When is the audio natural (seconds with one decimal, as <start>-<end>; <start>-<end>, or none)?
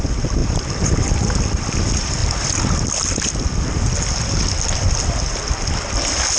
0.0-6.4